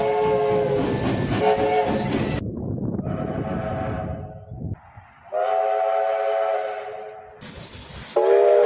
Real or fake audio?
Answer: real